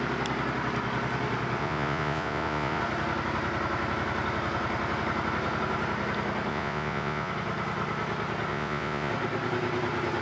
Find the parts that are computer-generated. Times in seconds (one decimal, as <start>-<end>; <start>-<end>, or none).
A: 1.6-2.8; 6.5-7.3; 8.5-9.1